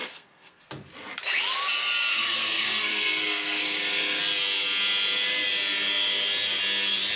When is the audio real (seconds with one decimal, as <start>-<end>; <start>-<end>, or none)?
0.7-2.1; 4.2-7.2